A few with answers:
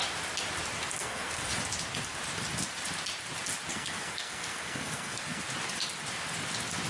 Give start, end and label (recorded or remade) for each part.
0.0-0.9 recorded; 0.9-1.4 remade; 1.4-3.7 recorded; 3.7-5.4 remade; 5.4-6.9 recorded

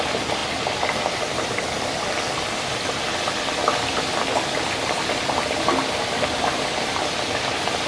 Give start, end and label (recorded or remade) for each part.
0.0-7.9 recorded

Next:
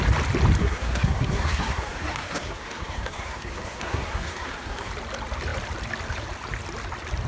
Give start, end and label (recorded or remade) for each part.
0.0-0.6 recorded; 0.6-4.9 remade; 4.9-7.3 recorded